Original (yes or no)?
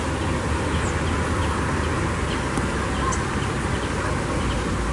yes